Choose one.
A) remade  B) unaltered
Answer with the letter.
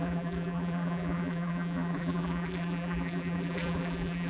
A